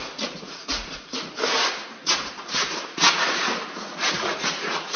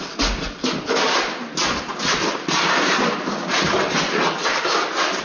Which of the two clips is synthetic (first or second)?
first